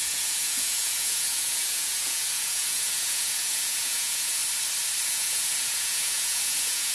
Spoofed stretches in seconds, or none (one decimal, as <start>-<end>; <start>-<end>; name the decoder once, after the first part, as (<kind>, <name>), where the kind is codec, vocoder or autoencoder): 0.0-4.4 (vocoder, Vocos); 5.1-6.9

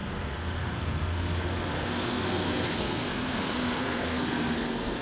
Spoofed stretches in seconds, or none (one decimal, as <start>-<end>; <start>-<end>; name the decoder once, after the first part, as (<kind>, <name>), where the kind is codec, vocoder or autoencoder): 0.0-5.0 (codec, SNAC)